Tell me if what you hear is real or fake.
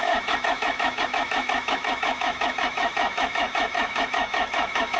fake